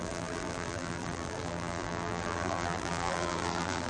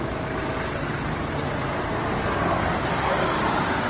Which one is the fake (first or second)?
first